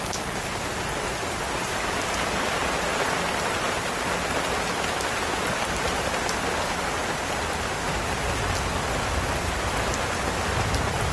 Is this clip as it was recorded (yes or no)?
yes